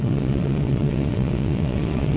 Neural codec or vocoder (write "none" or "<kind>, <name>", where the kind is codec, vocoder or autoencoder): vocoder, WaveNeXt